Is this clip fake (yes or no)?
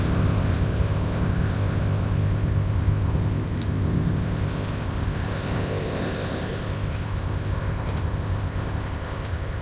yes